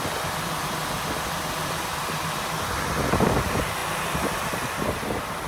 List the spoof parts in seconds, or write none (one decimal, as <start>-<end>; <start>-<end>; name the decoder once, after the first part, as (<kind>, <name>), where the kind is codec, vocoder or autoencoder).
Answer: 0.0-5.5 (vocoder, BigVGAN v2)